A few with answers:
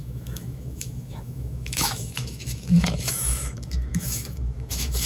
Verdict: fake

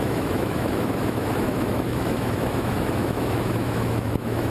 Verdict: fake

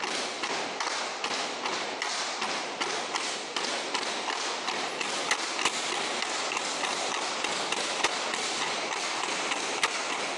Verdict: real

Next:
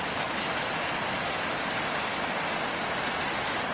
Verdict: real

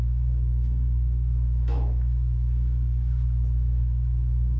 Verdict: fake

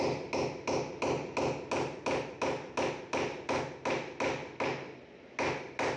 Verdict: real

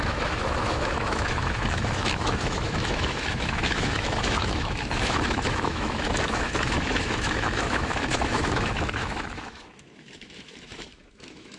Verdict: fake